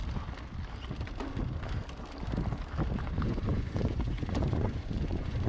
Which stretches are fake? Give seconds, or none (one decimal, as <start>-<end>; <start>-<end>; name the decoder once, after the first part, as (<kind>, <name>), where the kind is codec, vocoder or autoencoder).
3.0-5.5 (vocoder, Vocos)